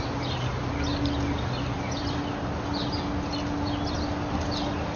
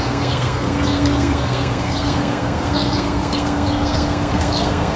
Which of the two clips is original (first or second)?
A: first